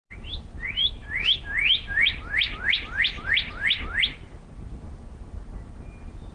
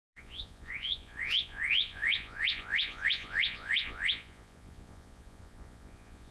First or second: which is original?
first